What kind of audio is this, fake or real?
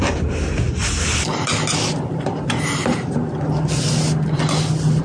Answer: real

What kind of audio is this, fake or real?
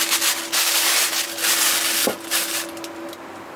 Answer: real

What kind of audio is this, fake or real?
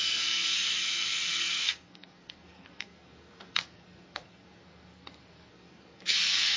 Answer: fake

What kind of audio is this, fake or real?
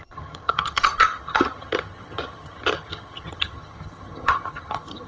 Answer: fake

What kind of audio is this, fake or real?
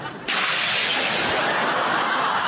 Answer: real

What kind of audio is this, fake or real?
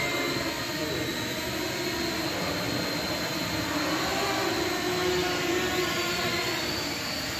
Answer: real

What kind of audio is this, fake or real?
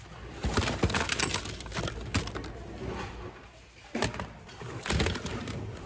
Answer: real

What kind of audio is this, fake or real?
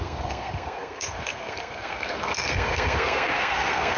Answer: fake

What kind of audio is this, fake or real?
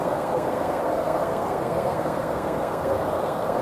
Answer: fake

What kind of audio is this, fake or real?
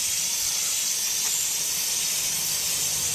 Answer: real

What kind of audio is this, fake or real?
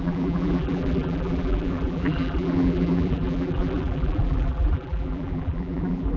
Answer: fake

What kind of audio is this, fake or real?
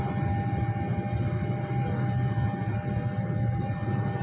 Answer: real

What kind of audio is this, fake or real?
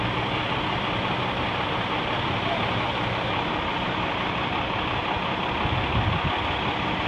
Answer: fake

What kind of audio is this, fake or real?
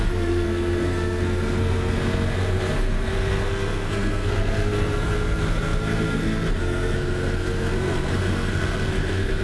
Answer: fake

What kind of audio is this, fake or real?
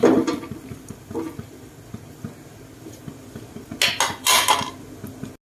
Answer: real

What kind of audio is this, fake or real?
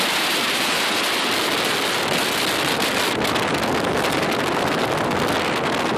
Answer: real